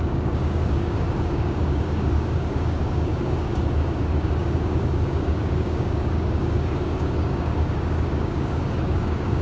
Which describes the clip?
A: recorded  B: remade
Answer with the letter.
B